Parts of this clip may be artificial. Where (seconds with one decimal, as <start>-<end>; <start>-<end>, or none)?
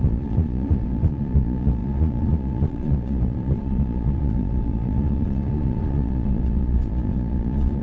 0.0-7.8